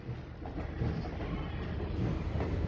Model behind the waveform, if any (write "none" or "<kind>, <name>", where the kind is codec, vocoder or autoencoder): none